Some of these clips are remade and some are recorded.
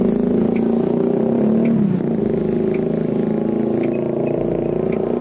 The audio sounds recorded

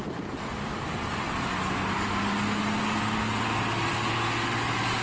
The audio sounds recorded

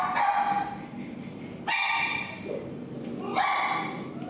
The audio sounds recorded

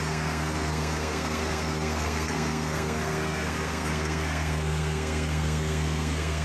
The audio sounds remade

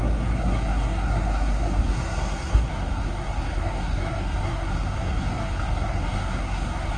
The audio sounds remade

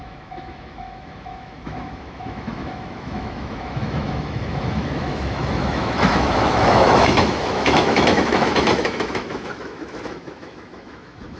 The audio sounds remade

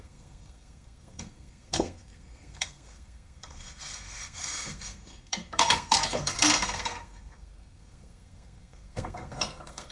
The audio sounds remade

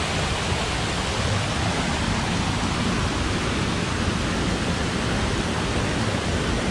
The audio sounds recorded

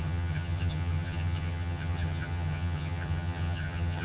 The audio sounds remade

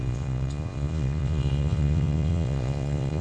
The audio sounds remade